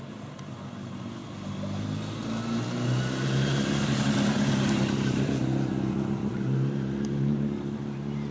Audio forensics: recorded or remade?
recorded